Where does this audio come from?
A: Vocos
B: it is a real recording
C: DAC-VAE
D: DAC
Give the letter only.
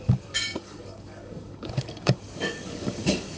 D